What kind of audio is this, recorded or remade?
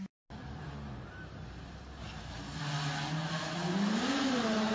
recorded